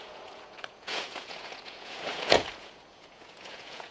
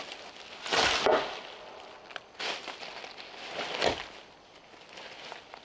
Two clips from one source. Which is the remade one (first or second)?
first